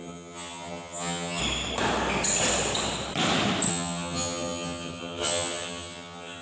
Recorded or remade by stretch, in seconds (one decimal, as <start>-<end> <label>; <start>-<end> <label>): 0.0-1.4 remade; 1.4-3.7 recorded; 3.7-6.4 remade